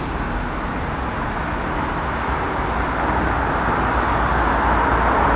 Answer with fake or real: real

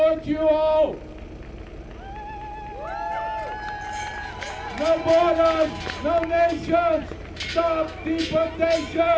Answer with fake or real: real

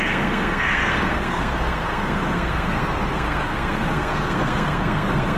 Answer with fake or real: fake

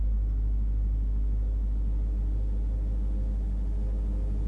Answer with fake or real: real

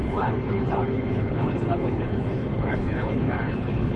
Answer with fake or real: fake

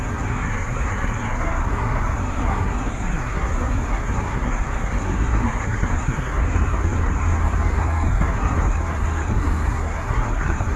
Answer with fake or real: fake